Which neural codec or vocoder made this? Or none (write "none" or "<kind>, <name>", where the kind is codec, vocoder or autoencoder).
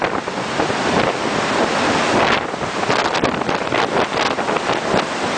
vocoder, BigVGAN v2